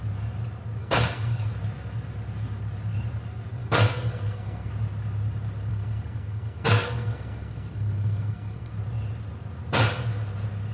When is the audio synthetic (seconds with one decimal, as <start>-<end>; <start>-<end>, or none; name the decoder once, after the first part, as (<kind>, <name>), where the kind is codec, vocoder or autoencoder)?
0.8-1.5 (codec, SNAC); 3.6-4.7; 5.7-8.7